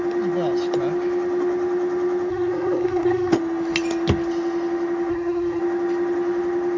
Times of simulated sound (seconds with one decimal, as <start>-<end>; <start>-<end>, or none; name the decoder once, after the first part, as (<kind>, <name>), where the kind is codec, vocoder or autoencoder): 2.3-3.3 (codec, SNAC); 5.1-5.6

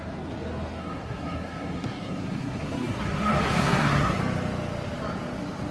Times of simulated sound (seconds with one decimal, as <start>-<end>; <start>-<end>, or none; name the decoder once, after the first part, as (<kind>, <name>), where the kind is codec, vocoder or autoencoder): 0.8-4.2 (codec, SNAC)

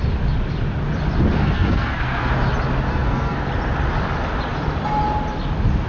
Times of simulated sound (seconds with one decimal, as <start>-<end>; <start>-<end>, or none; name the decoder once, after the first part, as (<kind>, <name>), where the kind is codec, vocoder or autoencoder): 1.4-2.3 (codec, SNAC); 2.9-3.4

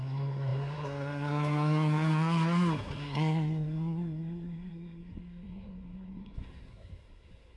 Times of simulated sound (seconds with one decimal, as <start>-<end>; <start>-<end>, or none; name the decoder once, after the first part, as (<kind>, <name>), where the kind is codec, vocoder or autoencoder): 0.0-7.6 (codec, SNAC)

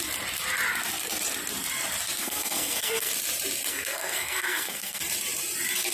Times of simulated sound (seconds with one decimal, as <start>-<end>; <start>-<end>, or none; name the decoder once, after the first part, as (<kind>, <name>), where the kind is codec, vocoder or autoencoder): 2.2-3.1 (codec, SNAC); 3.7-5.0